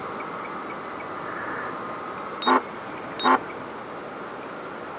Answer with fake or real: real